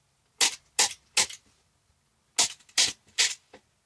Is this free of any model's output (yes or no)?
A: yes